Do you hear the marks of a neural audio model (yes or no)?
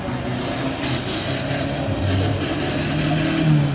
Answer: no